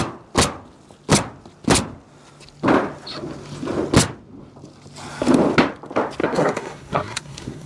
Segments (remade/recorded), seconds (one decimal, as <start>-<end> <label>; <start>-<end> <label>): 0.0-6.2 recorded; 6.2-7.7 remade